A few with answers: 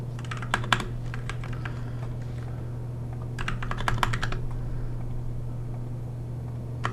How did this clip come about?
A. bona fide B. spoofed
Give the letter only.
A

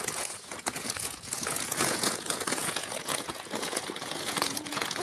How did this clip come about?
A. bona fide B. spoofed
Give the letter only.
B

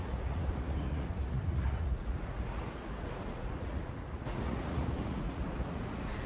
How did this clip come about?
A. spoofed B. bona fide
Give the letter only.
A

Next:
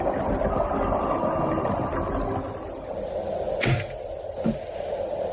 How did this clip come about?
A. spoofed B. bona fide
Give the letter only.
B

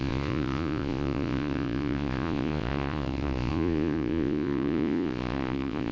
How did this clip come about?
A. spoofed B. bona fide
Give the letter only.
A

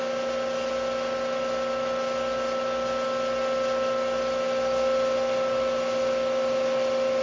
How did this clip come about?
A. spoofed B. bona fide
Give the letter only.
B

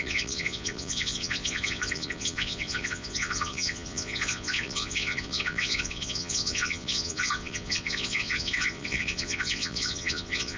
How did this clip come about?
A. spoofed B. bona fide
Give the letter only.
A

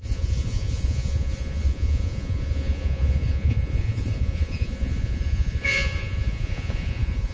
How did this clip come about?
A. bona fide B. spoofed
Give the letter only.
B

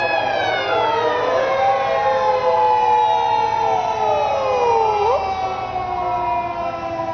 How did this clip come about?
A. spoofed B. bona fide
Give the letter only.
B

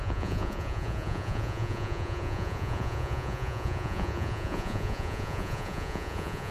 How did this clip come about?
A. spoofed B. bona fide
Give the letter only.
A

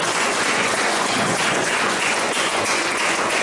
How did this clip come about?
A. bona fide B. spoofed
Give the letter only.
B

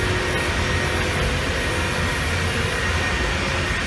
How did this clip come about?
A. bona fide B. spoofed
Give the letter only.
A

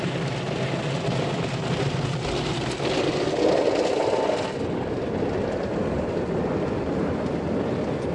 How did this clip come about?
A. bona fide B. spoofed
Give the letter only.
A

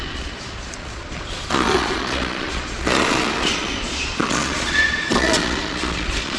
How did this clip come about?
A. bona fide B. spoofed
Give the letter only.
B